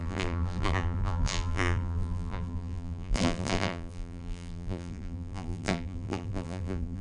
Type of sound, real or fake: fake